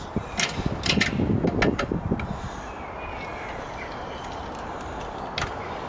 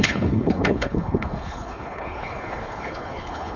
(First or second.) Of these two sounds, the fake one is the second